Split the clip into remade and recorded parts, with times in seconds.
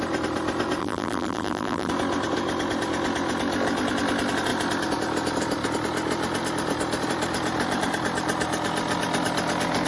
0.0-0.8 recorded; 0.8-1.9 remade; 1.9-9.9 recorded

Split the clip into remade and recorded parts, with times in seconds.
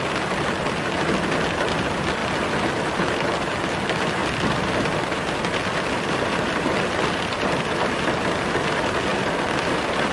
0.0-2.2 recorded; 2.2-2.8 remade; 2.8-4.2 recorded; 4.2-8.1 remade; 8.1-9.1 recorded; 9.1-10.1 remade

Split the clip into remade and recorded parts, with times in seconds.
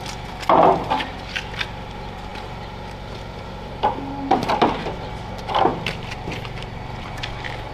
0.0-5.7 recorded; 5.7-7.7 remade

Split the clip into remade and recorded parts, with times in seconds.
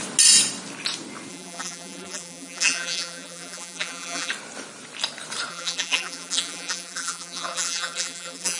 0.0-1.3 recorded; 1.3-4.3 remade; 4.3-5.5 recorded; 5.5-8.6 remade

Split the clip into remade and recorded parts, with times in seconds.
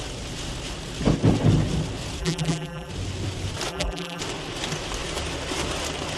0.0-2.2 recorded; 2.2-2.9 remade; 2.9-3.7 recorded; 3.7-4.2 remade; 4.2-6.2 recorded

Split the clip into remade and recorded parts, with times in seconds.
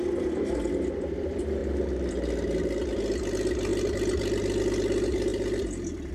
0.0-1.6 recorded; 1.6-2.1 remade; 2.1-3.7 recorded; 3.7-4.6 remade; 4.6-5.3 recorded; 5.3-6.1 remade